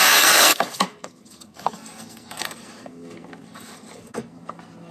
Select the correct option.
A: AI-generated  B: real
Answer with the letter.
A